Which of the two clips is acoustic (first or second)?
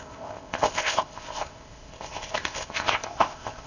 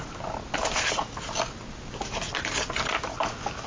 second